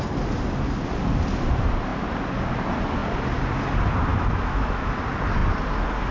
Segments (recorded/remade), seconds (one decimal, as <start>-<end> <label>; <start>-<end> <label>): 0.0-4.1 recorded; 4.1-5.0 remade; 5.0-6.1 recorded